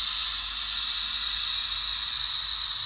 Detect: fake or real real